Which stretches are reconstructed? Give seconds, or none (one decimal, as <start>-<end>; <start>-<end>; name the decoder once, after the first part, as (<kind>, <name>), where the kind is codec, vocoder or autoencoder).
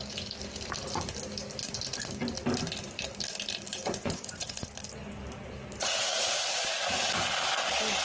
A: 3.7-4.7 (vocoder, Vocos)